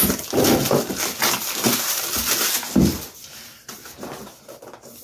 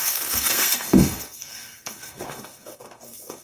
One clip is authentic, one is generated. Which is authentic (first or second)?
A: first